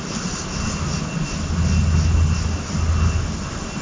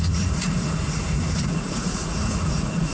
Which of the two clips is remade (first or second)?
second